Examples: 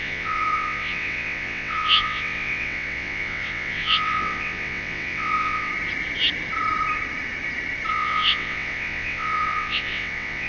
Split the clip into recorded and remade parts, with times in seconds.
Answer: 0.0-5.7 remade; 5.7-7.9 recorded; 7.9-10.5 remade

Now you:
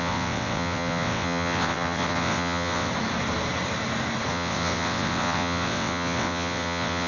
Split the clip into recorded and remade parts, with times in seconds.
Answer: 0.0-2.9 remade; 2.9-4.3 recorded; 4.3-7.1 remade

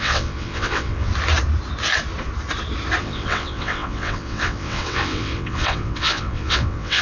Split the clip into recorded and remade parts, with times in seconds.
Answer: 0.0-1.1 remade; 1.1-3.0 recorded; 3.0-7.0 remade

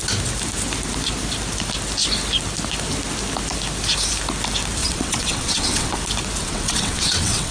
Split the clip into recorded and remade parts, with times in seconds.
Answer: 0.0-4.8 recorded; 4.8-6.0 remade; 6.0-6.4 recorded; 6.4-7.5 remade